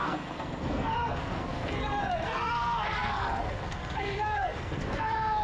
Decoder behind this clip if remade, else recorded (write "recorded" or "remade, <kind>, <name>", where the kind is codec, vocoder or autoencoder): remade, codec, SNAC